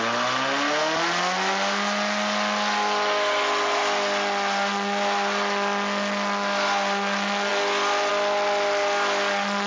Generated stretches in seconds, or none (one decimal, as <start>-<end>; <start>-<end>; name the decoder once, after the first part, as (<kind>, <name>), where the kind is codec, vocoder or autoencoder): none